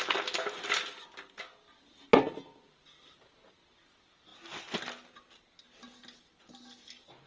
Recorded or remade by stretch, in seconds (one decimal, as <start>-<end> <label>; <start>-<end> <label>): 0.0-7.3 recorded